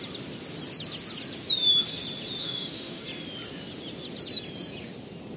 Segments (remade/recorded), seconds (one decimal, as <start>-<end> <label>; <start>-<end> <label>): 0.0-2.4 recorded; 2.4-3.0 remade; 3.0-5.4 recorded